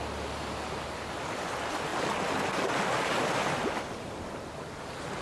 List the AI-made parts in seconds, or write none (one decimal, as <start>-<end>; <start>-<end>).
none